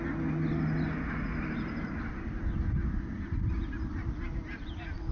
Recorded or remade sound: recorded